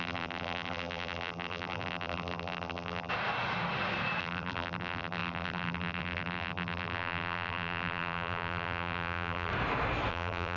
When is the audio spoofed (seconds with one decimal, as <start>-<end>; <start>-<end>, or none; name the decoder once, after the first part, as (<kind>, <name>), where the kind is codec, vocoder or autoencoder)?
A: 0.0-3.1 (vocoder, BigVGAN v2); 4.2-9.5; 10.1-10.6